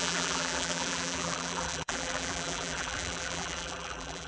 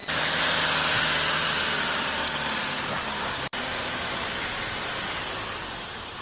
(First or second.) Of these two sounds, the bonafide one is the second